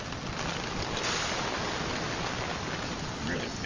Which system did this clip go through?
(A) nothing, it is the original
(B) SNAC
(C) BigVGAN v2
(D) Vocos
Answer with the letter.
A